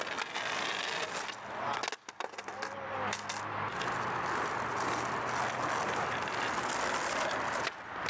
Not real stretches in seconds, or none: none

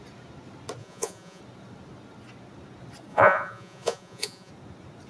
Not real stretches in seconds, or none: 0.8-1.4 (vocoder, Vocos); 3.1-4.5

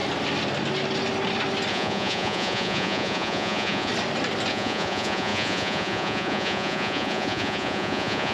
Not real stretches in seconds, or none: 1.7-3.9 (vocoder, Vocos); 4.5-8.3

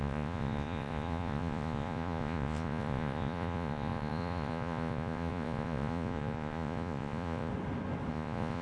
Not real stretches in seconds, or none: 0.0-7.5 (vocoder, Vocos); 8.1-8.6

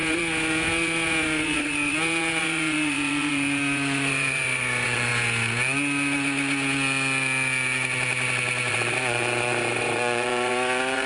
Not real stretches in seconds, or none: 0.0-5.1 (vocoder, Vocos); 8.7-11.1

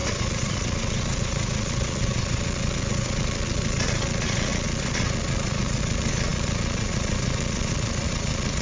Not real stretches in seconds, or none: 0.0-8.6 (vocoder, Vocos)